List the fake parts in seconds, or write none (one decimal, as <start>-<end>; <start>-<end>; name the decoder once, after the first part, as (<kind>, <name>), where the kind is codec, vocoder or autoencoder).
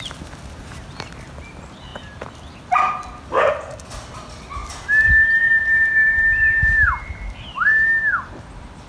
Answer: none